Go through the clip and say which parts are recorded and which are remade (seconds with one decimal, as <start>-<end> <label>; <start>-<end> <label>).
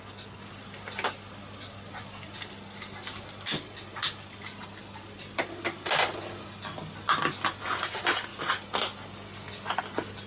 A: 0.0-10.3 recorded